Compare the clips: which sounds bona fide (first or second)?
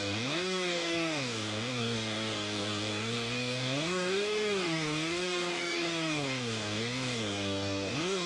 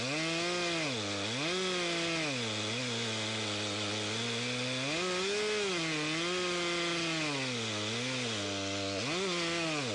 second